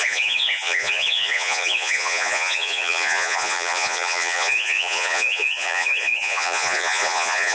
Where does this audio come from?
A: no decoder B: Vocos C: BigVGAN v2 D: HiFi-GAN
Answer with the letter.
B